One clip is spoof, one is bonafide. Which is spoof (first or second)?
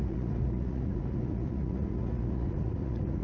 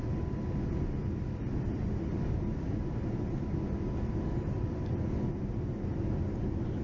first